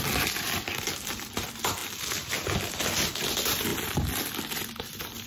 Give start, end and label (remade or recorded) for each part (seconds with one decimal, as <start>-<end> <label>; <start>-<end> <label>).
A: 0.0-5.3 recorded